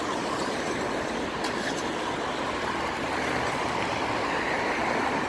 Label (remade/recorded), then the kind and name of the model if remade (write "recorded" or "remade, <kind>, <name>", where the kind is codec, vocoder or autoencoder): recorded